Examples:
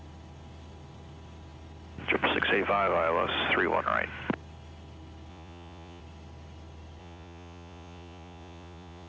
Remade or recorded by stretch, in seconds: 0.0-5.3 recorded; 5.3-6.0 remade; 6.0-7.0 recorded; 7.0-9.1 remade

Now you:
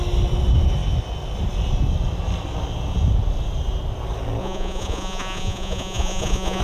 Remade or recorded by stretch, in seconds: 0.0-4.4 recorded; 4.4-6.6 remade